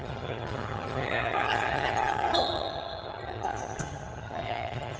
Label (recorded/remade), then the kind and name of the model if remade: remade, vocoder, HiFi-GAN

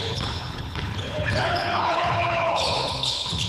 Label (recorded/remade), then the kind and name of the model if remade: remade, codec, HILCodec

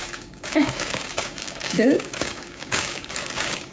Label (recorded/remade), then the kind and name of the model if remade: remade, codec, DAC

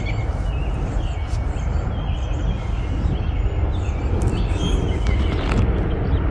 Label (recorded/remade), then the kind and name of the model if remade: recorded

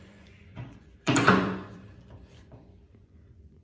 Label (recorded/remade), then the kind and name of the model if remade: remade, vocoder, Vocos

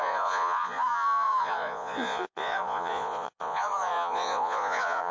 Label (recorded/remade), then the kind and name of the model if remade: remade, vocoder, Vocos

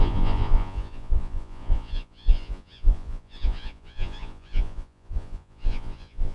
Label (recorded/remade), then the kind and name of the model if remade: remade, vocoder, Vocos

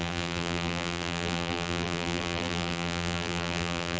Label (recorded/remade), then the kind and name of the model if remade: remade, vocoder, BigVGAN v2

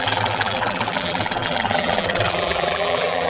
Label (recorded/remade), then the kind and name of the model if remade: remade, vocoder, BigVGAN v2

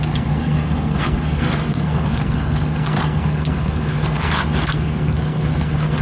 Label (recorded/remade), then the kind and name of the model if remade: remade, codec, SNAC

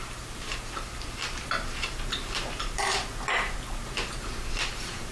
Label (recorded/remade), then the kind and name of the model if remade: remade, vocoder, BigVGAN v2